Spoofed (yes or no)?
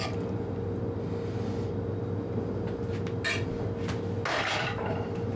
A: no